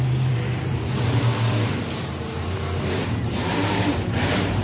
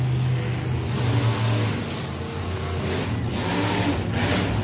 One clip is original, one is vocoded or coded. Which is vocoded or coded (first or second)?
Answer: first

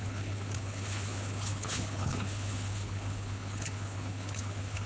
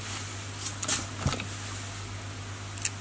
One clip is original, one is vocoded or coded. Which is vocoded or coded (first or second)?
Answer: first